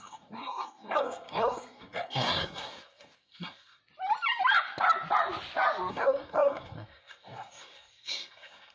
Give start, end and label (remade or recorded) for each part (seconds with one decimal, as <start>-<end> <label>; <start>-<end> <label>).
0.0-3.8 remade; 3.8-5.9 recorded; 5.9-8.7 remade